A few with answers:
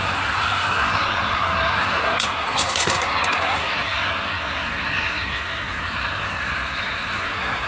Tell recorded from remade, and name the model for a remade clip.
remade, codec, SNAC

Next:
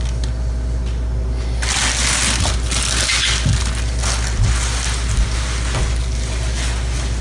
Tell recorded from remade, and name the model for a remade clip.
recorded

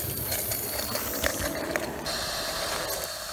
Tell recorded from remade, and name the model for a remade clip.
recorded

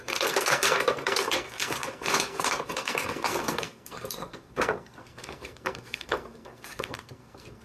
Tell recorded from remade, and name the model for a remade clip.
remade, codec, SNAC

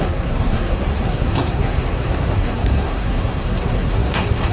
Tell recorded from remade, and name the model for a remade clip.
remade, codec, SNAC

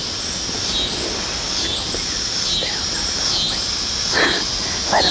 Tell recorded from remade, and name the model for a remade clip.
recorded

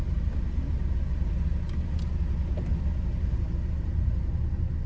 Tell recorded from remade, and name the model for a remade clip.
recorded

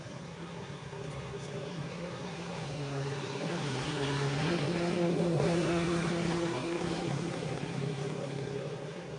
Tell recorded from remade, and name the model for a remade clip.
remade, codec, SNAC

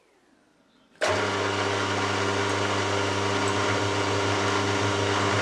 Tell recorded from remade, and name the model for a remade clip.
recorded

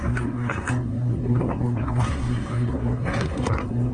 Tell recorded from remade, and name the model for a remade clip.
remade, codec, SNAC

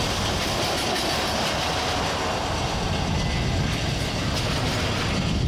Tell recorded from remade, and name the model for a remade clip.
recorded